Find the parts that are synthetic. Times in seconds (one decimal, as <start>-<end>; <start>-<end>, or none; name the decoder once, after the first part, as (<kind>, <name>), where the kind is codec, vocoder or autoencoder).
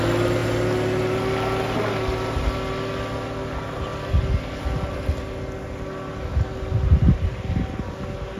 none